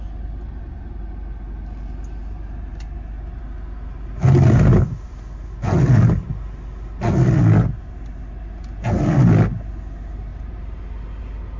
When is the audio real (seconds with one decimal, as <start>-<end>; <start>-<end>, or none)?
0.0-11.6